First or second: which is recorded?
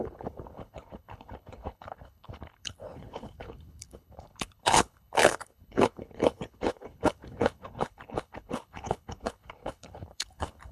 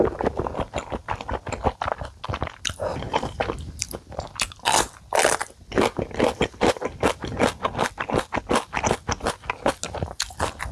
second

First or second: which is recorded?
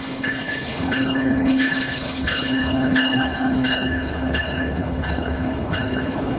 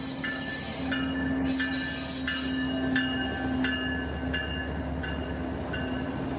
second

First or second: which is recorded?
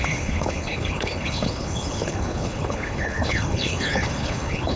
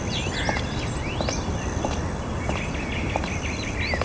second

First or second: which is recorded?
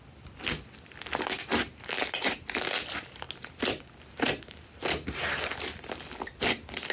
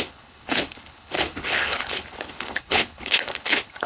first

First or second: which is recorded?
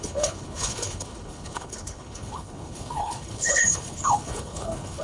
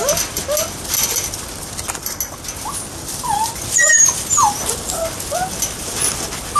second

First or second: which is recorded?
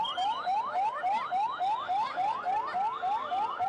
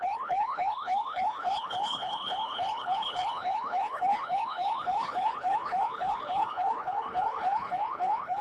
first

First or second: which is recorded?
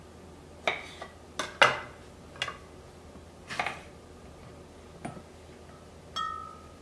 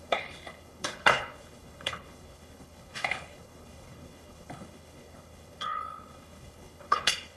first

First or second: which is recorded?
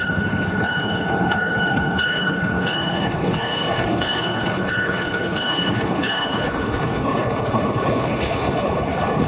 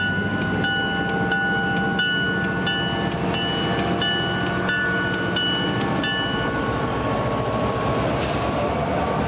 second